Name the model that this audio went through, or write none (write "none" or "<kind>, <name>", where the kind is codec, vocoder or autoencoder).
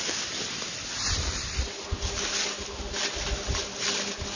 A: none